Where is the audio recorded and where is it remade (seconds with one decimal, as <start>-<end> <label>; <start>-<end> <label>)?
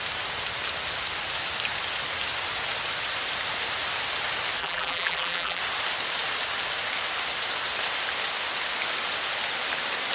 0.0-4.6 recorded; 4.6-5.6 remade; 5.6-10.1 recorded